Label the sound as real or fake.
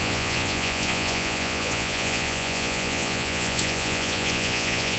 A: fake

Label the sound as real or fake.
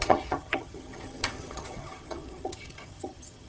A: fake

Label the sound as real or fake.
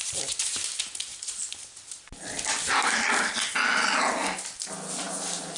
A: real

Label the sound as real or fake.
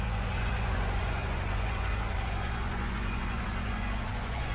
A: fake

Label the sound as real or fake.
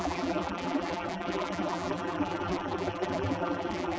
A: fake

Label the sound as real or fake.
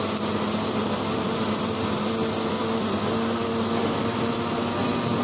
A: real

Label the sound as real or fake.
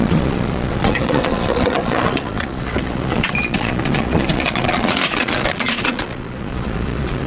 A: fake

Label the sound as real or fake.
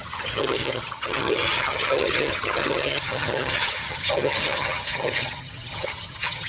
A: fake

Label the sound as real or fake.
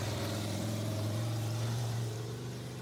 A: fake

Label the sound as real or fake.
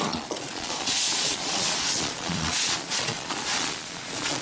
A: fake